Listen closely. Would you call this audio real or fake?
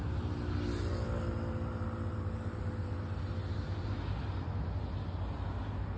real